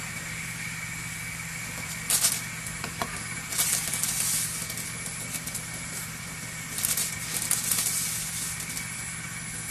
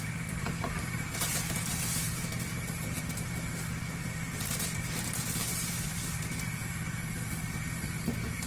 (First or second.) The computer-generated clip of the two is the second